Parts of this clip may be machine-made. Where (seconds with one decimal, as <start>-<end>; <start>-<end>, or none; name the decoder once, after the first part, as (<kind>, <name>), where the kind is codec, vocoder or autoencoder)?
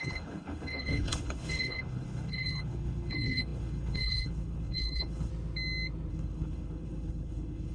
0.0-5.3 (codec, HILCodec); 6.1-7.7